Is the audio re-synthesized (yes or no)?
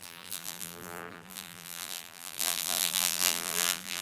yes